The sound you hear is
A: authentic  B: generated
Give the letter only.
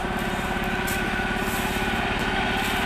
A